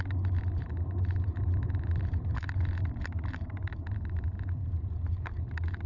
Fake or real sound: fake